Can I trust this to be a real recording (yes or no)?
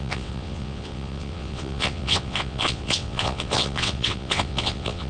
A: no